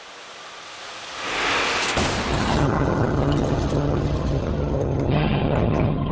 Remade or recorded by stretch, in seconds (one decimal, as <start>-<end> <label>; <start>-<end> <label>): 0.0-2.3 recorded; 2.3-6.1 remade